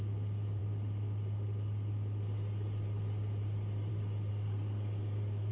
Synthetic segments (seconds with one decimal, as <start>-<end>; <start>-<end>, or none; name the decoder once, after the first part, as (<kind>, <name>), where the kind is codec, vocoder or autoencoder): 4.3-5.5 (codec, SNAC)